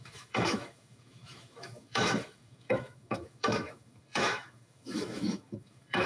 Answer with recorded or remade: remade